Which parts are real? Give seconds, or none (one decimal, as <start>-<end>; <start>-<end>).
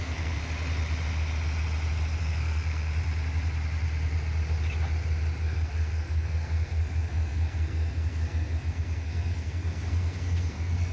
0.4-2.2; 2.9-5.4